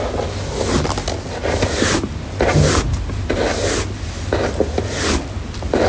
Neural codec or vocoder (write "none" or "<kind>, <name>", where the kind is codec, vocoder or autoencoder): none